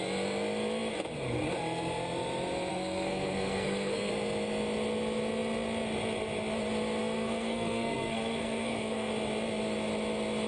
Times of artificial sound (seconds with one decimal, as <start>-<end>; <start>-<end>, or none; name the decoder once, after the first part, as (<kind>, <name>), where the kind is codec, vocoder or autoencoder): 2.7-4.1 (codec, SNAC); 7.0-9.1